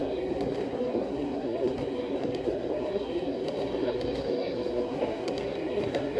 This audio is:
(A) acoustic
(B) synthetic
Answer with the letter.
B